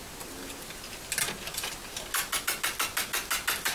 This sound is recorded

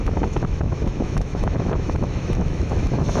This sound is remade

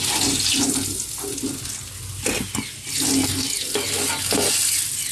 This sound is recorded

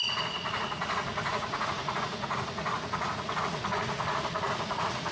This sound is remade